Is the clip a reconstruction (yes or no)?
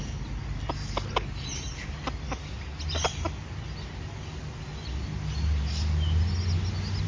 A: no